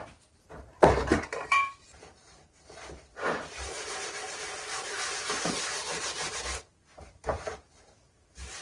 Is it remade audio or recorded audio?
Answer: remade